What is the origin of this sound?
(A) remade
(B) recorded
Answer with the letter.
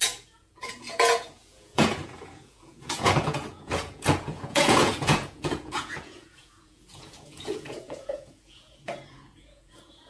A